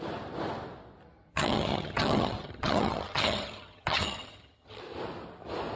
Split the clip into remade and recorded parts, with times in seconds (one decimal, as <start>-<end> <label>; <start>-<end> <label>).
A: 0.0-1.3 recorded; 1.3-4.8 remade; 4.8-5.8 recorded

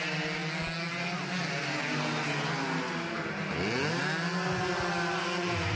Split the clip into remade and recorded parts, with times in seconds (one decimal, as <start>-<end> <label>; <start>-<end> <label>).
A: 0.0-5.8 recorded